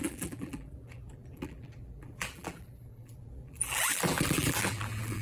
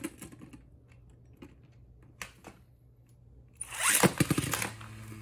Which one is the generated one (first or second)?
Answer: first